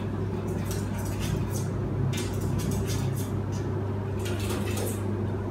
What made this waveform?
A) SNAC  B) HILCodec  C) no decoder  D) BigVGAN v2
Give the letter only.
C